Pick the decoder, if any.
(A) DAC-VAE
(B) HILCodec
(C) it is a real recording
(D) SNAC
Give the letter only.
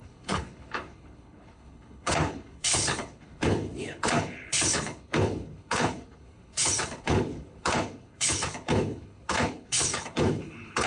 B